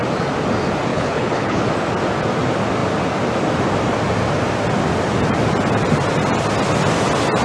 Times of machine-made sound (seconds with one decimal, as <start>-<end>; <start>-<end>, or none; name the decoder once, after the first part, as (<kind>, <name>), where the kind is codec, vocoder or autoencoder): 0.9-1.6 (codec, HILCodec)